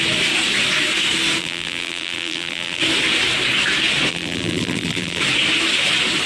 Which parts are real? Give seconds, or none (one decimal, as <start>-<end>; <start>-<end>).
0.0-1.4; 2.8-4.1; 5.2-6.3